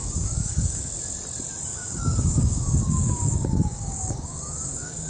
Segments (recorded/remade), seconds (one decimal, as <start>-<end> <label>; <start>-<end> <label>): 0.0-1.0 remade; 1.0-1.7 recorded; 1.7-5.1 remade